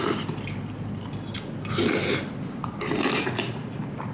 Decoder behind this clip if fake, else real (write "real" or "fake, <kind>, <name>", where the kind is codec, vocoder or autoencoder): fake, vocoder, BigVGAN v2